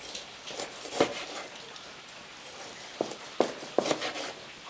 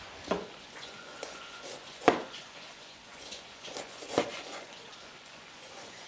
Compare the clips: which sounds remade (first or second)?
second